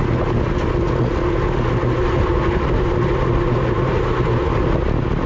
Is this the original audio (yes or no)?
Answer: yes